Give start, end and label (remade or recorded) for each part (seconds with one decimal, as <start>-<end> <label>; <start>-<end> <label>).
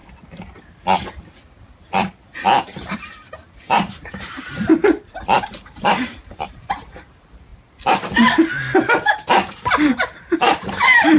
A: 0.0-1.8 recorded; 1.8-4.7 remade; 4.7-5.4 recorded; 5.4-7.5 remade; 7.5-9.5 recorded; 9.5-11.2 remade